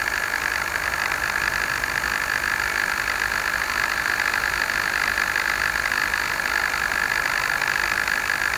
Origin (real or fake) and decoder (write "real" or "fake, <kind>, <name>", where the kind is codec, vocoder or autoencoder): real